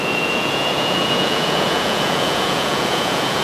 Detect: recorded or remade remade